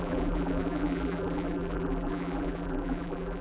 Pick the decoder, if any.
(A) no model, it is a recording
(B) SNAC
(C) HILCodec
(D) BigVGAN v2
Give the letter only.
D